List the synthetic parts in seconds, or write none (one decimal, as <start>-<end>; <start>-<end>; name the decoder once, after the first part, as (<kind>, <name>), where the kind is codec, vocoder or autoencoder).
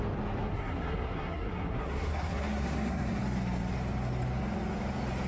0.4-3.2 (codec, SNAC)